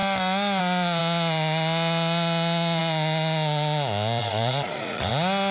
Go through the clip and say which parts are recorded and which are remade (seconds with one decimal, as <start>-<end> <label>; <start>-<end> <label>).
0.0-4.2 recorded; 4.2-5.1 remade; 5.1-5.5 recorded